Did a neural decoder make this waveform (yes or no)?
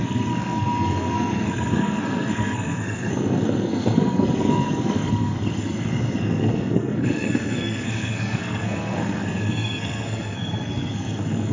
yes